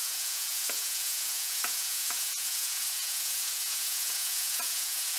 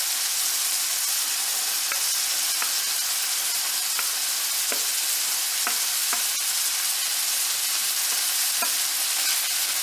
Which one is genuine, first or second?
second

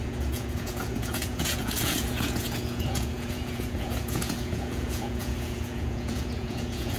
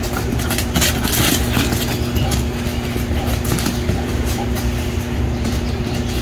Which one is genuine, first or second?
second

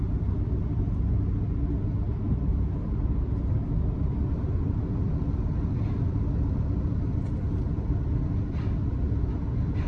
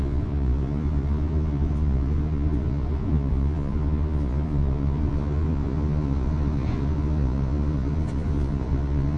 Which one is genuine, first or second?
first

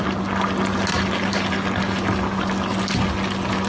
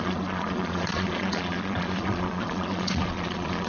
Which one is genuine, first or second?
first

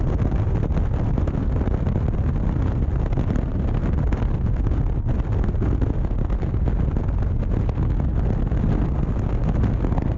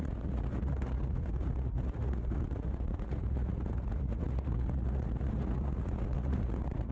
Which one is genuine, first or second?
first